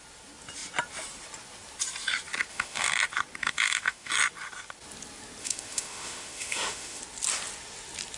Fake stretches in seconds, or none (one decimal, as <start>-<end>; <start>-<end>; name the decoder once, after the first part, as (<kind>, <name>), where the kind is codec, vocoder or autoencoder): 2.5-3.0 (autoencoder, DAC-VAE); 3.4-4.1; 5.4-7.0